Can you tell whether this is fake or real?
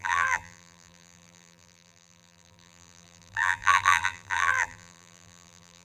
fake